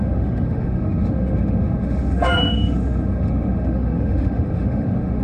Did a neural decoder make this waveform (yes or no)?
yes